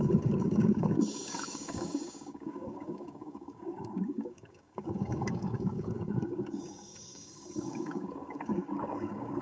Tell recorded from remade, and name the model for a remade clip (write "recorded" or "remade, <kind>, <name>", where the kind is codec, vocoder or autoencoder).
remade, codec, DAC